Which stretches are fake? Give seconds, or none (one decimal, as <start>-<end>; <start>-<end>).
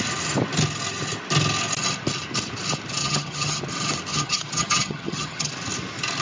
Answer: 3.0-3.6; 4.1-5.5